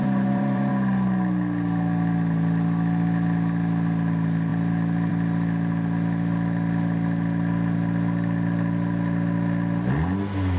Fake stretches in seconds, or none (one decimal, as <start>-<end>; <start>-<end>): 0.0-0.7